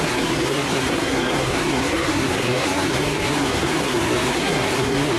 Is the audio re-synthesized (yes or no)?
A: yes